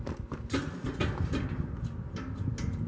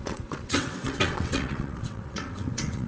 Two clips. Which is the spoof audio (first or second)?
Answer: second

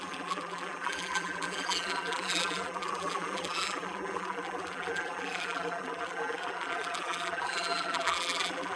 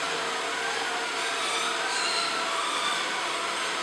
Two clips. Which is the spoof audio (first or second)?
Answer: first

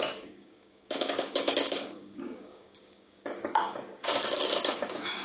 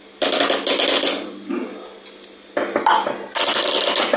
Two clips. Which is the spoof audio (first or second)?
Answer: first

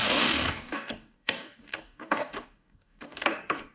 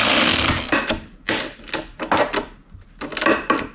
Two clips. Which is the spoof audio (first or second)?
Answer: first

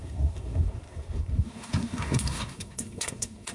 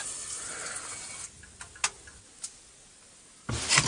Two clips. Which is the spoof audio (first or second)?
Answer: first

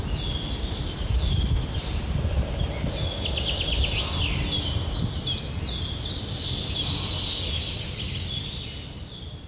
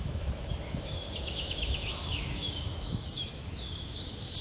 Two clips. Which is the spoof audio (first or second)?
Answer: second